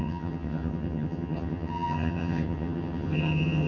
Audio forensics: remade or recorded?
remade